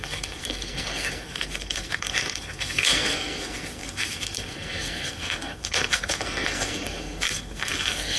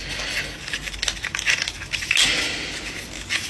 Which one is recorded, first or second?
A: second